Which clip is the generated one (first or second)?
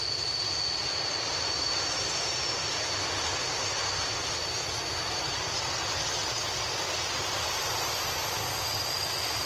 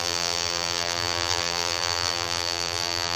second